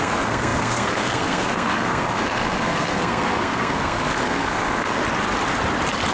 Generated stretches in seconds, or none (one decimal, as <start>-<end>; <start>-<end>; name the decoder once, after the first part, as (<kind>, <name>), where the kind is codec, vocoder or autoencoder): 0.0-5.0 (codec, SNAC)